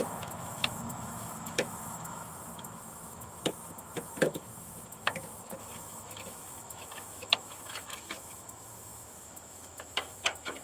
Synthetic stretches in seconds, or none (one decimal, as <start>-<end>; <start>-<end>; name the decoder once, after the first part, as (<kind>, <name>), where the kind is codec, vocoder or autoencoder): 0.0-10.6 (autoencoder, DAC-VAE)